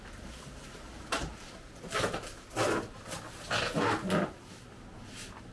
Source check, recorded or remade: recorded